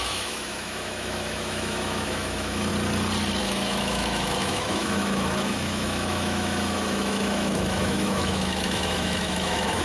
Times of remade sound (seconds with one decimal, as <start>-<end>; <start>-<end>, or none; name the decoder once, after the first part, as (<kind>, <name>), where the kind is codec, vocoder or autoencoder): 0.0-2.7 (autoencoder, DAC-VAE); 3.4-9.8